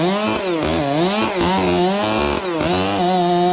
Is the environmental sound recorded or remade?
recorded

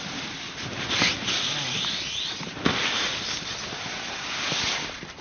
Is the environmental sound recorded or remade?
recorded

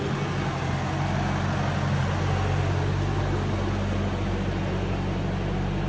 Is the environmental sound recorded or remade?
recorded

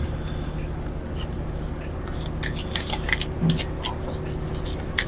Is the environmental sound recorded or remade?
recorded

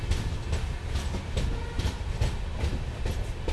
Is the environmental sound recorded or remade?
recorded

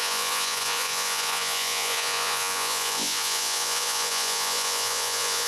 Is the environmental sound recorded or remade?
remade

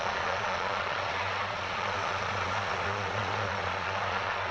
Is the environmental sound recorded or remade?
remade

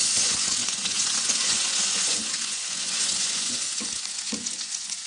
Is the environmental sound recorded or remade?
remade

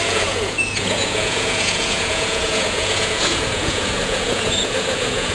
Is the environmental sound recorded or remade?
remade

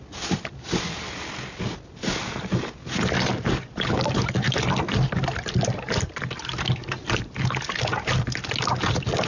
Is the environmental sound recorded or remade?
recorded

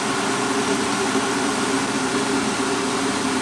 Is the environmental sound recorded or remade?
recorded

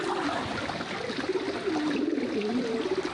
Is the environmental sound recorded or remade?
recorded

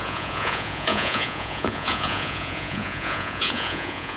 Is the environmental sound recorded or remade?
remade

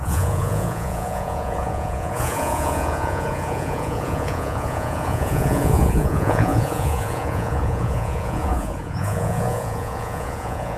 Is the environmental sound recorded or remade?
remade